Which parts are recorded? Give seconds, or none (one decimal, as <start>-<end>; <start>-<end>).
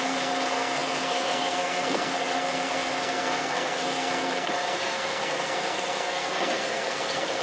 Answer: none